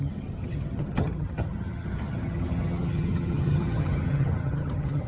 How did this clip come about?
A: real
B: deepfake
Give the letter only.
B